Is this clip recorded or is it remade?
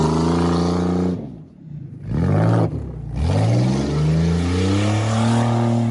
recorded